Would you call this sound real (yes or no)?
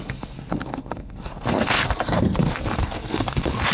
no